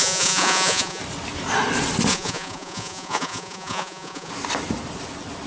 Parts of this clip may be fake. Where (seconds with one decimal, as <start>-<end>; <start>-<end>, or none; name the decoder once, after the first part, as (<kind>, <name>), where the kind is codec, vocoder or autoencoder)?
0.0-1.0 (vocoder, Vocos); 2.1-4.3